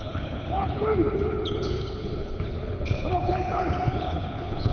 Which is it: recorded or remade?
remade